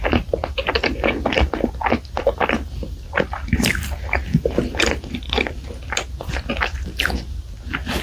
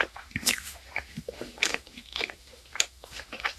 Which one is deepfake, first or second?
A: second